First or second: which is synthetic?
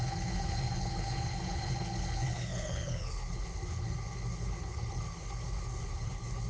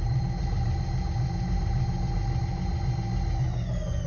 first